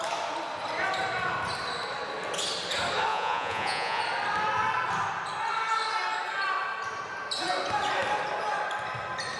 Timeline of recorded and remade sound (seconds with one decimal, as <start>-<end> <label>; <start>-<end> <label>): 0.0-3.1 recorded; 3.1-4.0 remade; 4.0-9.4 recorded